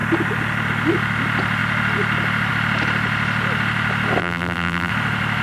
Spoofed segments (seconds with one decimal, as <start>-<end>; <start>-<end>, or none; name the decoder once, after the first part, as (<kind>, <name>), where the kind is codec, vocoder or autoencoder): 4.2-4.9 (vocoder, BigVGAN v2)